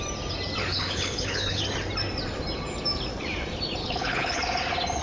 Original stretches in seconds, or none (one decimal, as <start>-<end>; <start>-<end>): 0.0-0.7; 1.6-3.8; 4.4-5.0